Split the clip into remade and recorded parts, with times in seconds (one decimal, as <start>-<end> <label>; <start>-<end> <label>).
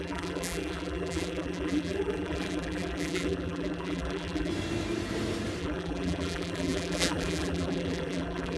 0.0-4.5 remade; 4.5-5.6 recorded; 5.6-8.6 remade